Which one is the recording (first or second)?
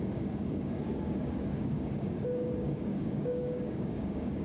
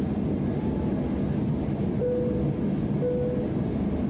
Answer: second